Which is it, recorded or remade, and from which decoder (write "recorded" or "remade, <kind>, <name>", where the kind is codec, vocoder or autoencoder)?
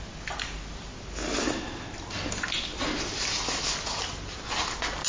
recorded